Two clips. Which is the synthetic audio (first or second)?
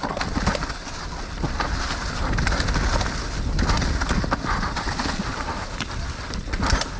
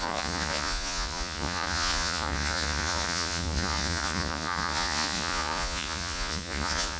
second